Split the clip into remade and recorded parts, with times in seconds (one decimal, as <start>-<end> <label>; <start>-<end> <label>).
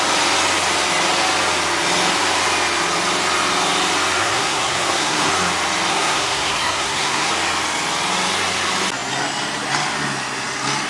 0.0-4.2 recorded; 4.2-5.3 remade; 5.3-5.9 recorded; 5.9-7.3 remade; 7.3-10.9 recorded